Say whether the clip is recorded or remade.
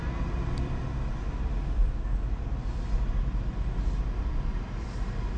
recorded